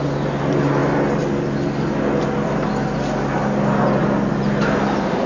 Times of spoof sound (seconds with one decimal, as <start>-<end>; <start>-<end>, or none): none